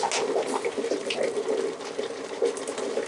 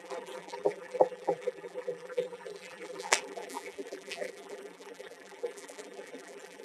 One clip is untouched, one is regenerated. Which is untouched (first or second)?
first